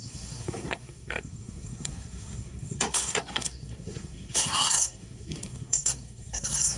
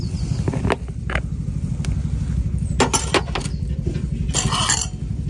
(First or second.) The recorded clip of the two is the second